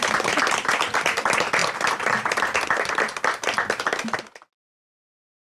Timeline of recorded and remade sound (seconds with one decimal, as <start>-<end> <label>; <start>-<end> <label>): 0.0-5.4 recorded